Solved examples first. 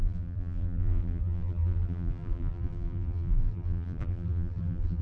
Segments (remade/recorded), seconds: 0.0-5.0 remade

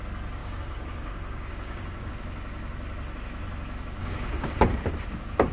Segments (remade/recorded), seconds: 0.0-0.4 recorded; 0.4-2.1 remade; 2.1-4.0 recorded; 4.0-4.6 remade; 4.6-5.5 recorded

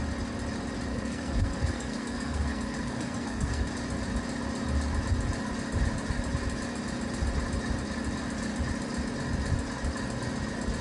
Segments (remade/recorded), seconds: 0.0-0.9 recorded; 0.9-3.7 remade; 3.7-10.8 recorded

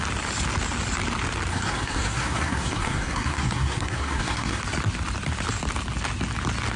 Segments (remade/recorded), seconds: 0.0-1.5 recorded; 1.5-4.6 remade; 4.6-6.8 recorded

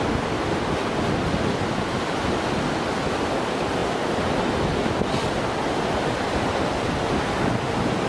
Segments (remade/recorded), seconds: 0.0-8.1 recorded